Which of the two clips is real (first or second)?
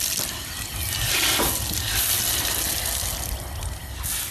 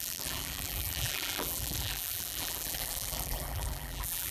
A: first